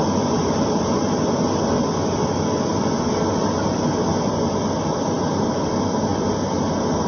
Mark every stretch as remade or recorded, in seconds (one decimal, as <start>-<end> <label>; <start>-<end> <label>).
0.0-7.1 recorded